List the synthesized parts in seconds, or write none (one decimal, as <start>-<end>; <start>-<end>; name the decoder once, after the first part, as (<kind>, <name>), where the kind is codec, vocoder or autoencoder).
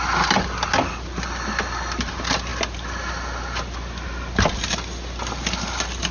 none